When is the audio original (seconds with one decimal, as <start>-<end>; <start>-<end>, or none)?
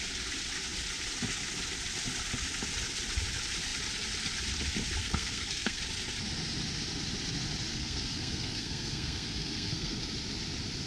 0.0-5.0; 5.8-7.7; 10.0-10.9